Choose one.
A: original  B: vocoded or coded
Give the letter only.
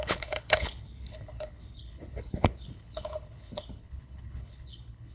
B